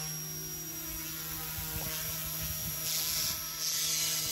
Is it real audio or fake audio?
real